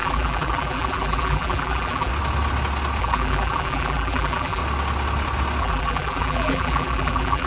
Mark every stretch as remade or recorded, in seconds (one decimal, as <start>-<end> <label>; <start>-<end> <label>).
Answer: 0.0-2.1 remade; 2.1-3.0 recorded; 3.0-4.6 remade; 4.6-5.6 recorded; 5.6-7.5 remade